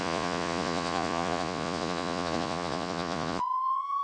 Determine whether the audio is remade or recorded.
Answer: remade